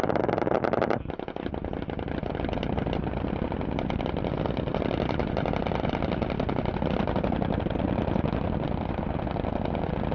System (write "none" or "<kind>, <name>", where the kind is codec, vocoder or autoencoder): none